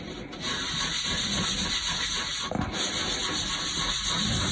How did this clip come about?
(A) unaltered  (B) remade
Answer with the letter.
A